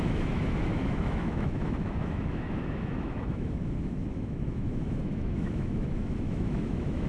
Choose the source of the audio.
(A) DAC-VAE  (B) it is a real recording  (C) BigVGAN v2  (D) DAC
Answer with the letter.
A